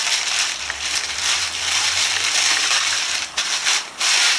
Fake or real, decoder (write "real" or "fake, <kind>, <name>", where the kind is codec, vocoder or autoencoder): fake, vocoder, BigVGAN v2